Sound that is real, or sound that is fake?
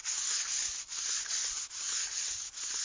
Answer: real